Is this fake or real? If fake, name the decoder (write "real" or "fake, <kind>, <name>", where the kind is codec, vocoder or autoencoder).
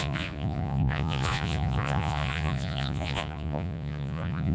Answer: fake, vocoder, Vocos